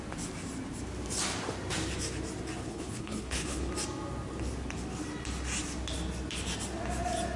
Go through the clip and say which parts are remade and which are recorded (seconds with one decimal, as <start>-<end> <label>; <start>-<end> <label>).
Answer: 0.0-2.6 recorded; 2.6-3.7 remade; 3.7-7.4 recorded